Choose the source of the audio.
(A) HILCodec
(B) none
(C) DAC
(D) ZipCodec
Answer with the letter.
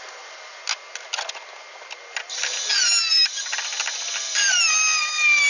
B